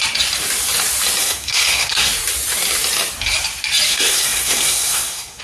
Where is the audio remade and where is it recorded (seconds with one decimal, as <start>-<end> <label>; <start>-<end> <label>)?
0.0-1.2 recorded; 1.2-2.1 remade; 2.1-3.9 recorded; 3.9-5.4 remade